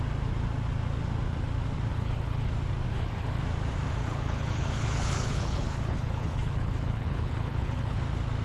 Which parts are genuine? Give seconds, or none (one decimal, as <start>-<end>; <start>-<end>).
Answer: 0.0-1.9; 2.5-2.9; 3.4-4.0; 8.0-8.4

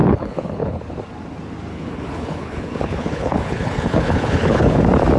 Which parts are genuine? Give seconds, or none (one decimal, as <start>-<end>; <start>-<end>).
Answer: 0.8-1.7; 4.8-5.2

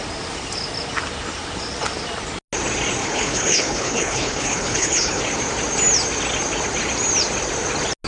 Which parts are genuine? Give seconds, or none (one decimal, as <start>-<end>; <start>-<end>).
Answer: 0.0-3.0; 5.2-8.1

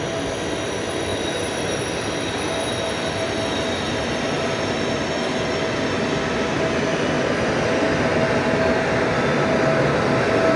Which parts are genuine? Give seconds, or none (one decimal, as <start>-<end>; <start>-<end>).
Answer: 0.0-10.6